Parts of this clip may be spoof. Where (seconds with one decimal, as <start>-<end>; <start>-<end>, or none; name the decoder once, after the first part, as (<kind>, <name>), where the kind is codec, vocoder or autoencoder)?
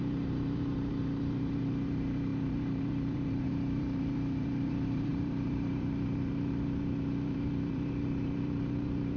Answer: 0.0-9.2 (vocoder, BigVGAN v2)